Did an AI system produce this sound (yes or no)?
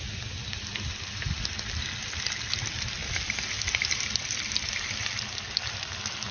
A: no